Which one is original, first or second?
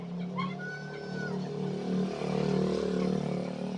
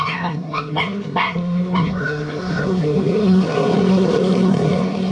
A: first